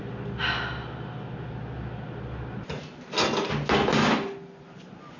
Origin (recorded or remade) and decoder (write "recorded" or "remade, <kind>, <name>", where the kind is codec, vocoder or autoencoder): recorded